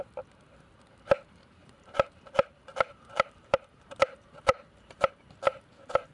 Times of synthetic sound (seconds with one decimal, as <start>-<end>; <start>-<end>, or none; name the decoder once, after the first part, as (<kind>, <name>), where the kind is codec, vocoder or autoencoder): 1.6-5.1 (vocoder, BigVGAN v2)